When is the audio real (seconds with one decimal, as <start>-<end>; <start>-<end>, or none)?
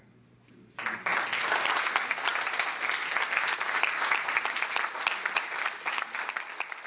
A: 0.0-6.9